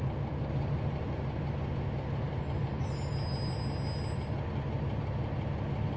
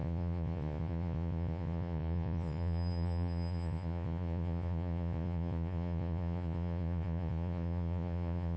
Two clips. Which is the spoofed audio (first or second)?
second